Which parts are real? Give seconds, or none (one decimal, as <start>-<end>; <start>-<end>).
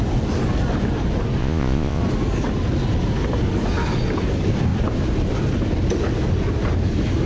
0.0-1.4; 2.0-7.3